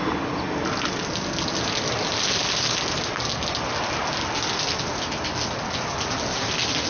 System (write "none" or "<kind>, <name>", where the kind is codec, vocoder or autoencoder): none